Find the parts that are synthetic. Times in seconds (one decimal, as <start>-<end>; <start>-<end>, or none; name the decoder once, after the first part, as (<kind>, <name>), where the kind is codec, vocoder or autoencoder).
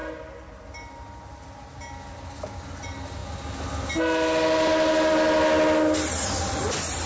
none